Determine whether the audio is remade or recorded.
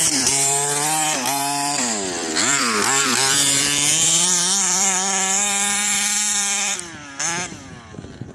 remade